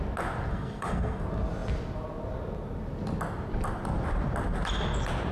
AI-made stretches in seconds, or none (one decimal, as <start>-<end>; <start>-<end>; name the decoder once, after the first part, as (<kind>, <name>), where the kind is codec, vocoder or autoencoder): 0.5-1.2 (codec, SNAC)